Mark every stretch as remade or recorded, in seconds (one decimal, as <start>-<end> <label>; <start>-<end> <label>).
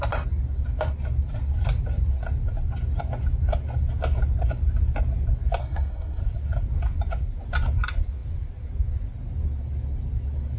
0.0-5.6 recorded; 5.6-6.2 remade; 6.2-10.6 recorded